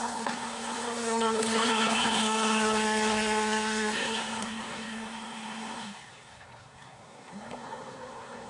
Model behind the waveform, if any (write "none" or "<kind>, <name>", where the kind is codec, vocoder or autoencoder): codec, SNAC